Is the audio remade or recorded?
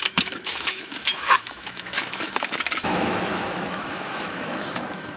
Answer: remade